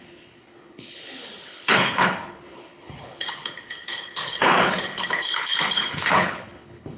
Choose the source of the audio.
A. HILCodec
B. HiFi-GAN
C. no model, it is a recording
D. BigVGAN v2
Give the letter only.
A